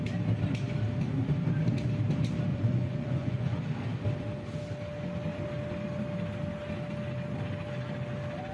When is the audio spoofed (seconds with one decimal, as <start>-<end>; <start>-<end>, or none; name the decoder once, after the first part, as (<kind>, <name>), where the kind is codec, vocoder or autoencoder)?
2.5-3.6 (vocoder, Vocos)